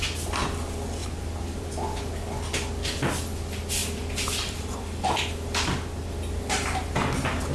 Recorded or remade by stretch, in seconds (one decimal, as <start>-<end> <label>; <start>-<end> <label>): 0.0-1.0 recorded; 1.0-2.0 remade; 2.0-3.8 recorded; 3.8-5.2 remade; 5.2-7.5 recorded